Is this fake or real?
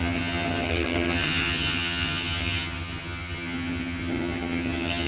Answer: fake